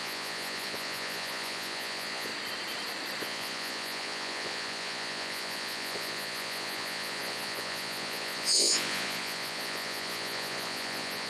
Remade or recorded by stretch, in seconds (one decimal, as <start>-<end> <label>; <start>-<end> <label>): 0.0-2.3 remade; 2.3-3.2 recorded; 3.2-11.3 remade